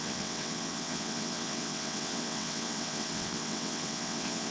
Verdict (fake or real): fake